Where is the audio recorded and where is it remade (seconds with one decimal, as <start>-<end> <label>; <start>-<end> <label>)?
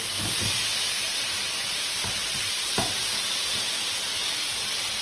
0.0-0.6 recorded; 0.6-3.0 remade; 3.0-5.0 recorded